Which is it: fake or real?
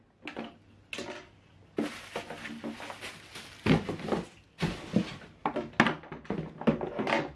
real